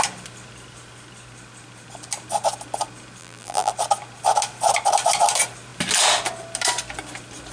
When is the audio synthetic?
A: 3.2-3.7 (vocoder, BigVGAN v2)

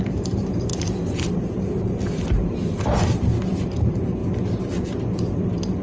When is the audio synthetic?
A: 0.0-0.7 (vocoder, BigVGAN v2); 1.3-3.3; 3.8-4.2; 5.3-5.8

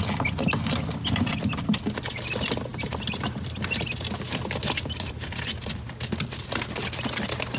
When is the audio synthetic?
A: 2.7-7.0 (vocoder, BigVGAN v2)

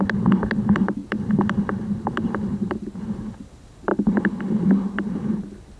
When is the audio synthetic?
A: 1.0-3.3 (vocoder, BigVGAN v2)

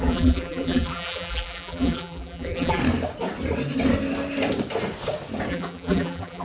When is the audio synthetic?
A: 0.0-2.8 (vocoder, BigVGAN v2); 5.5-6.4

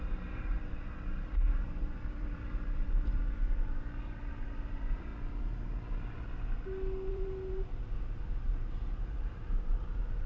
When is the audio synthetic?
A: 0.0-3.2 (vocoder, BigVGAN v2); 4.3-5.1; 7.1-10.3

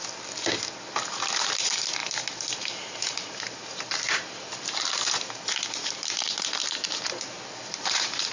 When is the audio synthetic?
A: 2.0-5.3 (vocoder, BigVGAN v2); 6.6-8.3

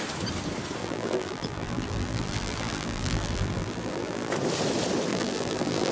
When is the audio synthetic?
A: 0.8-4.3 (vocoder, BigVGAN v2); 5.1-5.9